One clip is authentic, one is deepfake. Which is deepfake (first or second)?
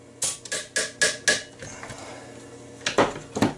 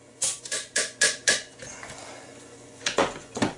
second